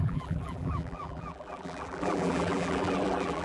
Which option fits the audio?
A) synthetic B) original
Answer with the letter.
A